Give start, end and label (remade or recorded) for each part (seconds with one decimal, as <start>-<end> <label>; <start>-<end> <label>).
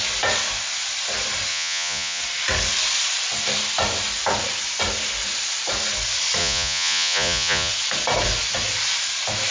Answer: 0.0-1.5 recorded; 1.5-2.2 remade; 2.2-6.4 recorded; 6.4-7.7 remade; 7.7-9.5 recorded